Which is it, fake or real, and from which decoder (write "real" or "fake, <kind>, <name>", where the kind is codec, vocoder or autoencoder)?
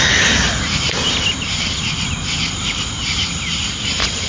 real